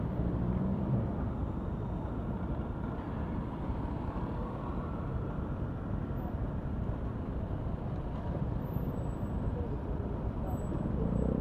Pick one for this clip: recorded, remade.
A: remade